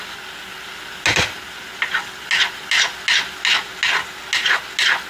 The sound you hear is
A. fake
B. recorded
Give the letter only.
B